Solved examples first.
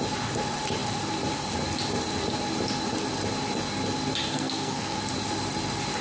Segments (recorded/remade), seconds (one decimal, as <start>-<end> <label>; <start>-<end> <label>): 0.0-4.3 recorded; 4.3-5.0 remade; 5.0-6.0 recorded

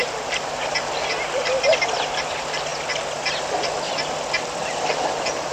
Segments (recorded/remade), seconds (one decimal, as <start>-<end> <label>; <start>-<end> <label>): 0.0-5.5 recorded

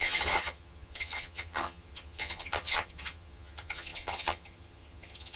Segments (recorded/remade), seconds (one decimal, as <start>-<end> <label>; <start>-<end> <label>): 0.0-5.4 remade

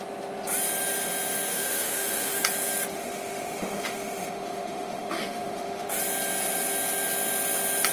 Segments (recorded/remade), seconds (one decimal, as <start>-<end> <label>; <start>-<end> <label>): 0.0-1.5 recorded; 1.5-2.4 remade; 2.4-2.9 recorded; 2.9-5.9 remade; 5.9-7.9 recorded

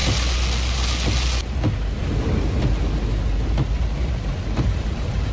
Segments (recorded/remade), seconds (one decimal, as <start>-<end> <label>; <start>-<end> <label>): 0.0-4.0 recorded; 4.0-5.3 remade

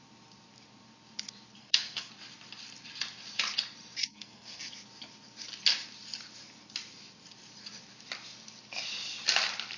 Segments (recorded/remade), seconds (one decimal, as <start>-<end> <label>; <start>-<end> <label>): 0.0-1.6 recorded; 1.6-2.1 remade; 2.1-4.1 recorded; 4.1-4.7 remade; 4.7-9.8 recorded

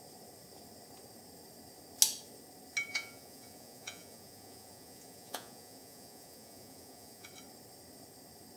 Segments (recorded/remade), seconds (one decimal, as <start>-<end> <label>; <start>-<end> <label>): 0.0-2.9 recorded; 2.9-7.3 remade; 7.3-8.6 recorded